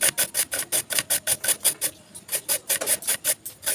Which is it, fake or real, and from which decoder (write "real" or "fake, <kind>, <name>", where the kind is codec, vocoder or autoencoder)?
real